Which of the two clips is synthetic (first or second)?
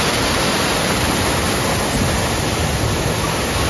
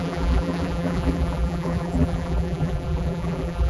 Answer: second